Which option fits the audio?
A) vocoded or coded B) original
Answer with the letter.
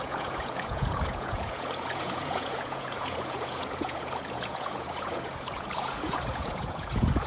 A